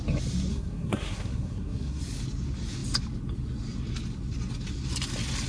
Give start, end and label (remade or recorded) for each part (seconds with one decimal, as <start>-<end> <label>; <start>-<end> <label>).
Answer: 0.0-0.5 recorded; 0.5-2.0 remade; 2.0-5.5 recorded